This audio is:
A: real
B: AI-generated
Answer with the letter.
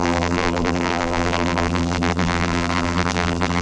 B